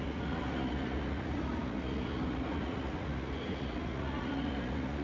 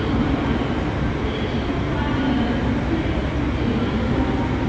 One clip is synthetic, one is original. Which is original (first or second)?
second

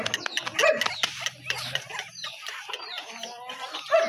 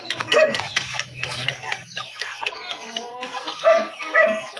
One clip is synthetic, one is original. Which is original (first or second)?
first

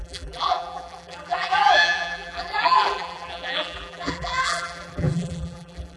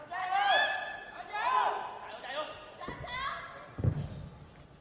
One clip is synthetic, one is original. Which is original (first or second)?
second